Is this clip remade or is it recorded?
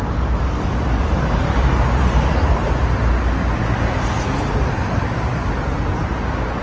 remade